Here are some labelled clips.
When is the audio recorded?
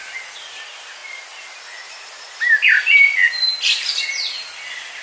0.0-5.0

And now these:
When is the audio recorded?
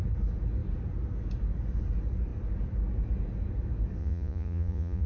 0.0-4.0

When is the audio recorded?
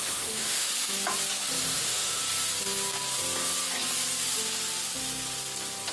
0.7-1.6; 2.2-5.9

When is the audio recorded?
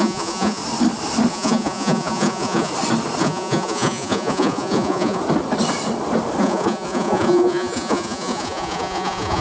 0.6-1.3; 2.7-3.2; 5.2-6.4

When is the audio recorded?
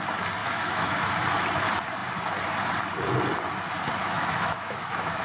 0.0-0.4; 1.1-4.0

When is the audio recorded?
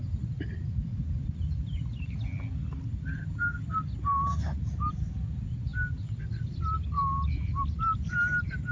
0.0-8.7